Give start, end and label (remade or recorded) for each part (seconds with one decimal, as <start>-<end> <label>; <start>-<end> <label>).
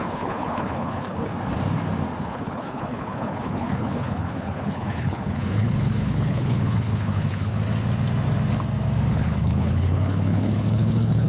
0.0-1.3 remade; 1.3-2.2 recorded; 2.2-7.5 remade; 7.5-9.1 recorded; 9.1-11.3 remade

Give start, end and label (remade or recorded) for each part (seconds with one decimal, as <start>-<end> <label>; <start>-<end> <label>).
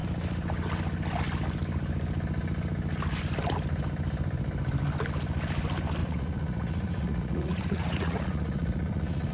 0.0-6.0 recorded; 6.0-9.3 remade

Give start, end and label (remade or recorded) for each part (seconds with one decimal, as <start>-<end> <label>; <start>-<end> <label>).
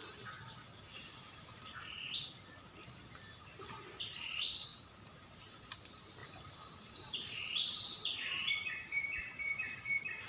0.0-4.7 recorded; 4.7-5.7 remade; 5.7-6.2 recorded; 6.2-8.5 remade; 8.5-10.3 recorded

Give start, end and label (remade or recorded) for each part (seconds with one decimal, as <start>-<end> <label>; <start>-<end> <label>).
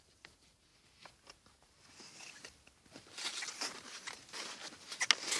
0.0-0.7 remade; 0.7-3.7 recorded; 3.7-4.6 remade; 4.6-5.4 recorded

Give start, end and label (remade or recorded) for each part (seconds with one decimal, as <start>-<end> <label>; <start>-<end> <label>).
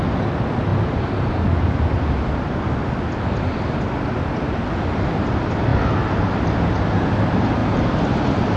0.0-8.6 recorded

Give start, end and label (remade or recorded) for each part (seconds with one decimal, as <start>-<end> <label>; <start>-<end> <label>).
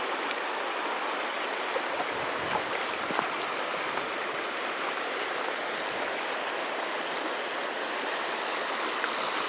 0.0-9.5 recorded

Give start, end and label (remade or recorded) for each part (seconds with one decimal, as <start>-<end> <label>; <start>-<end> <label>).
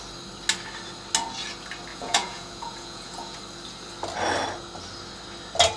0.0-1.9 recorded; 1.9-3.4 remade; 3.4-5.8 recorded